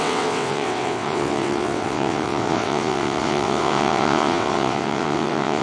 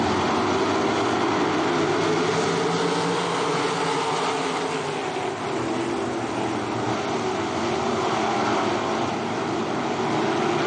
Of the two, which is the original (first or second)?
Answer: second